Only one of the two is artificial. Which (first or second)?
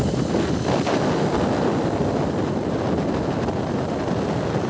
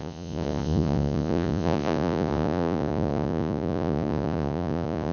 second